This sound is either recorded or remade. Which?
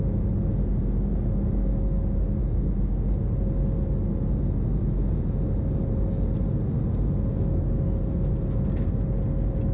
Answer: recorded